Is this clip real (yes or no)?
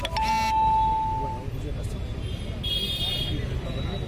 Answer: yes